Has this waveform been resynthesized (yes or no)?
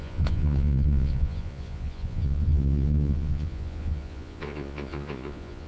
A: yes